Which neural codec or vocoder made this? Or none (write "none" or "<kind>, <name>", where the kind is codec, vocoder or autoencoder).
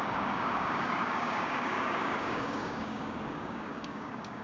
codec, DAC